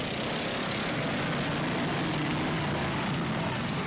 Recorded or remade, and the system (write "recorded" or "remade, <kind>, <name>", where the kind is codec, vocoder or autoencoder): recorded